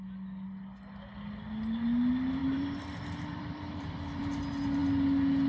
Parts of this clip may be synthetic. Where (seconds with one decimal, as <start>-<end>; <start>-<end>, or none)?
2.4-4.2